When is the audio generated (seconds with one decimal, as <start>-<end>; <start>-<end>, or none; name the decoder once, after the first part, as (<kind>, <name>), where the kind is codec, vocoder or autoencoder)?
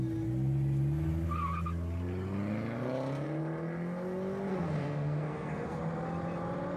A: 4.5-5.8 (codec, SNAC)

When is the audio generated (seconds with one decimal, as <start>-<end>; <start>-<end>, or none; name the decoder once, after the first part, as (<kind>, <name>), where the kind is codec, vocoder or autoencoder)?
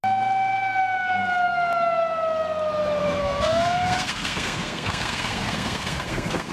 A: 3.0-6.5 (codec, SNAC)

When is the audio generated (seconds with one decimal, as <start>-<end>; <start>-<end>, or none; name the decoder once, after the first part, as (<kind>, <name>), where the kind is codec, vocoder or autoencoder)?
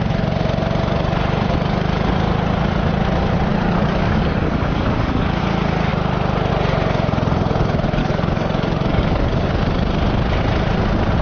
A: 3.5-5.4 (codec, DAC); 8.0-9.5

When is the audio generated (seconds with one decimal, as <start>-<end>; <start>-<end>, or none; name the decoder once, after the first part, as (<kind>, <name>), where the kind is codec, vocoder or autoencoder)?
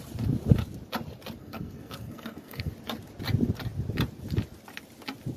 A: 1.4-2.7 (codec, SNAC)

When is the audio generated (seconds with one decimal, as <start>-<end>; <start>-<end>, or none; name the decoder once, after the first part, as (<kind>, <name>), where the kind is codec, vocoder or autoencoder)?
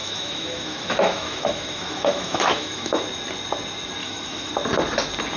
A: 0.0-3.0 (autoencoder, DAC-VAE); 4.0-4.5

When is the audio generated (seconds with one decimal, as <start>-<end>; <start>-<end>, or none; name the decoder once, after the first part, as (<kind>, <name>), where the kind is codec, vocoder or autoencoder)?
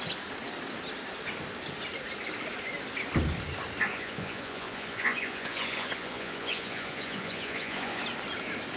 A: 3.9-8.0 (vocoder, Vocos)